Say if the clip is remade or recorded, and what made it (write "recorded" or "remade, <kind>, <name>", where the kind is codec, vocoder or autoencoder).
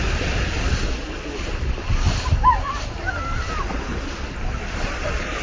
remade, vocoder, BigVGAN v2